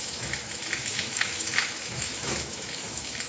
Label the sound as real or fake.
fake